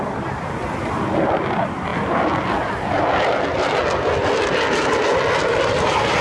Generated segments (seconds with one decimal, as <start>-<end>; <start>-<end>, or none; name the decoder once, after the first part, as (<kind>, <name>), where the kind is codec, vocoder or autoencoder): none